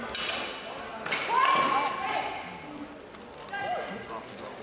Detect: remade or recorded recorded